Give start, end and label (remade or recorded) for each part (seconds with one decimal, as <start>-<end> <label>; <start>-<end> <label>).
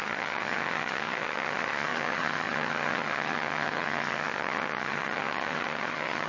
0.0-6.3 remade